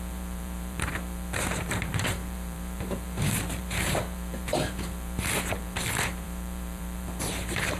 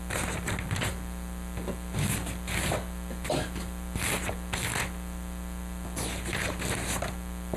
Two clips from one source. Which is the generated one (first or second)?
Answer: first